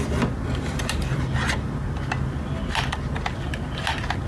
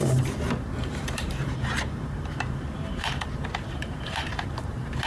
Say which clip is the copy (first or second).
second